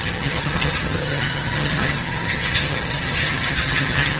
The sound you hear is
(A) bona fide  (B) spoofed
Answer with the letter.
B